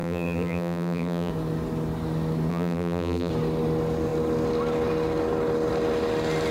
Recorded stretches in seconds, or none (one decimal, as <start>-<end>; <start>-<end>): 1.3-2.5; 3.3-6.5